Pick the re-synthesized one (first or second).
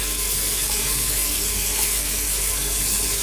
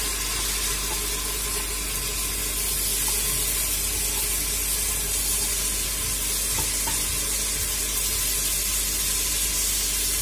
first